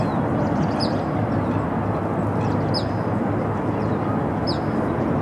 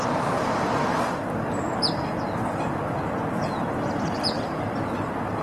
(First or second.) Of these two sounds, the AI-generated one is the second